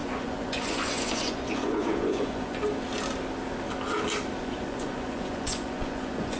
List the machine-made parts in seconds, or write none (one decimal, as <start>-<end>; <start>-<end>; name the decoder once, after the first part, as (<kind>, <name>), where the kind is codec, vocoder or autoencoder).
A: 0.0-2.7 (vocoder, Vocos); 4.4-6.4